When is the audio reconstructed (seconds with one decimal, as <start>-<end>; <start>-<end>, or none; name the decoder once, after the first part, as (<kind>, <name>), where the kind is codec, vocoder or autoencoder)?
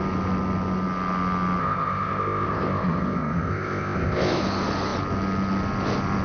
1.6-4.4 (codec, ZipCodec)